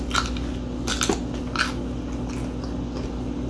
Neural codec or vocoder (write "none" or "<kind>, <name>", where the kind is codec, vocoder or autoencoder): none